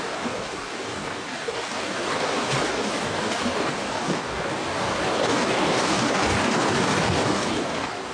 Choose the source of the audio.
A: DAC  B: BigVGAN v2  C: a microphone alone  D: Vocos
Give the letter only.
A